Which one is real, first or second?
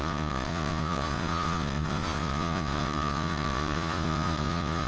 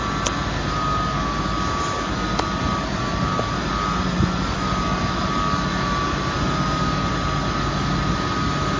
second